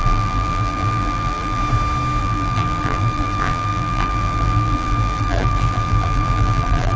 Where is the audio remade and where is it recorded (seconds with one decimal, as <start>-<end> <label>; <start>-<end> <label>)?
0.0-1.6 remade; 1.6-2.2 recorded; 2.2-7.0 remade